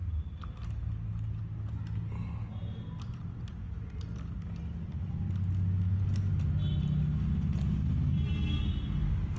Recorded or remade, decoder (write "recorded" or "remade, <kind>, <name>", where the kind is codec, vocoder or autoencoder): recorded